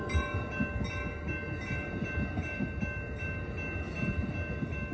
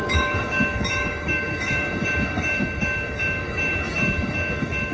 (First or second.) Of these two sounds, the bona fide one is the first